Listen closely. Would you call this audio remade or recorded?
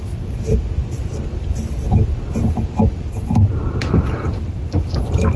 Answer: recorded